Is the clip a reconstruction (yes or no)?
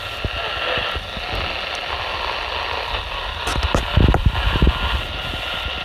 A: no